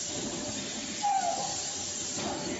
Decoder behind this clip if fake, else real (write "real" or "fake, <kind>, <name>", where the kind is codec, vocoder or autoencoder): fake, vocoder, BigVGAN v2